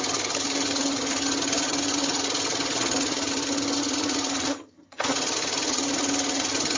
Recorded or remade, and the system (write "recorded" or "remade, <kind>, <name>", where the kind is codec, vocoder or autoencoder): remade, vocoder, HiFi-GAN